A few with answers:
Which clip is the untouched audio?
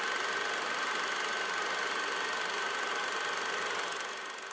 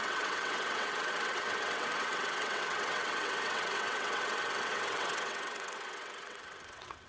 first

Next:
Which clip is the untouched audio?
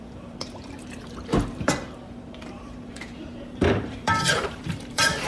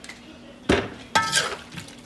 second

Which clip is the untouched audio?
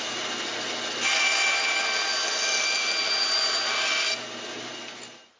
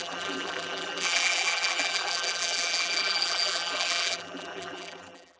first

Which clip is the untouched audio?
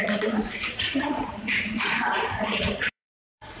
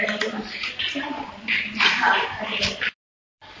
second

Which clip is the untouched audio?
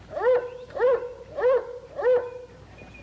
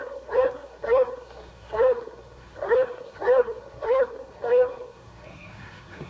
first